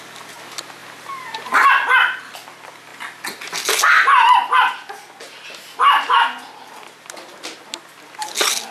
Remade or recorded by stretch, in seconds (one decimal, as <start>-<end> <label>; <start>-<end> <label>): 0.0-8.7 recorded